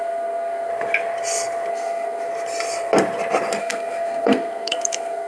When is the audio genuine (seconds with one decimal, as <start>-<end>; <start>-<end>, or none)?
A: 0.7-1.7; 2.3-3.6